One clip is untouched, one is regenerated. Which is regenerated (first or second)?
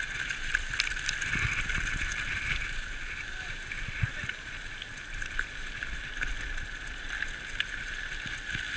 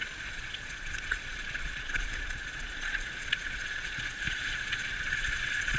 second